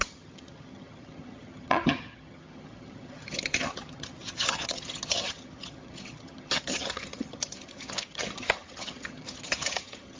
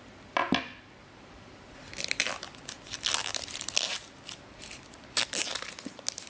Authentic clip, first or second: second